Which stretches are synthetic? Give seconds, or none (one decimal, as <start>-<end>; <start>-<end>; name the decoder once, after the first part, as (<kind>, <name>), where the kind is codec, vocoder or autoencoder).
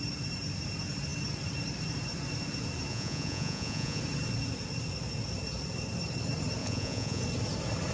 2.9-4.0 (vocoder, Vocos); 6.6-7.2